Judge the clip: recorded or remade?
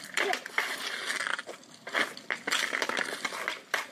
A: recorded